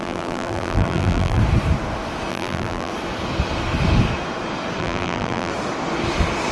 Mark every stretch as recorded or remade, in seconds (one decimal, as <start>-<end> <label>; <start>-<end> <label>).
0.0-1.4 remade; 1.4-2.3 recorded; 2.3-2.9 remade; 2.9-4.8 recorded; 4.8-5.5 remade; 5.5-6.5 recorded